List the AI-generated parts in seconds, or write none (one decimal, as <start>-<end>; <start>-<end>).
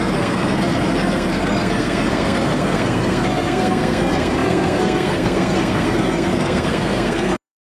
0.0-7.7